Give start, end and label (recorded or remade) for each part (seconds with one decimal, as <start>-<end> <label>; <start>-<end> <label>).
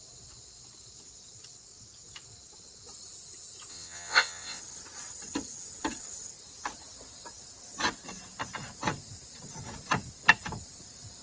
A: 0.0-3.7 recorded; 3.7-4.6 remade; 4.6-11.2 recorded